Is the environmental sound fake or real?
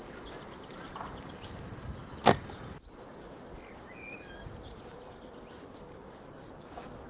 real